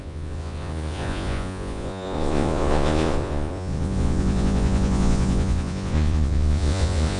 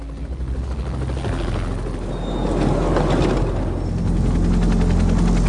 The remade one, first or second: first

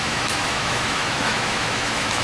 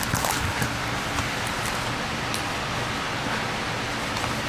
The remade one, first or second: first